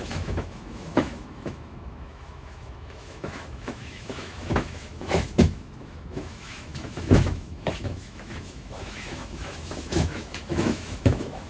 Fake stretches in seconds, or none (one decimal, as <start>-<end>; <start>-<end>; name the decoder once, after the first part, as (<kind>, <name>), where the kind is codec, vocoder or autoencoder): 0.0-11.5 (autoencoder, DAC-VAE)